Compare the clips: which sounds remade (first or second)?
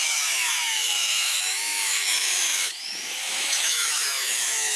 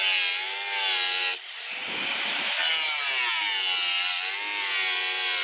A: first